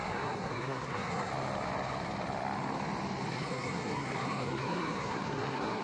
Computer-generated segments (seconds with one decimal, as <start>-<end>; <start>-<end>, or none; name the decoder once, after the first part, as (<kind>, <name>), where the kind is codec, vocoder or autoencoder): 0.0-1.3 (codec, SNAC); 3.3-5.8